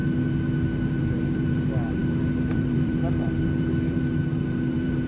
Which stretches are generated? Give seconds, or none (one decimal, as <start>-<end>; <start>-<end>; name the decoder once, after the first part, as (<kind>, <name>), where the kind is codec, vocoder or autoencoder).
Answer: 1.0-5.1 (vocoder, BigVGAN v2)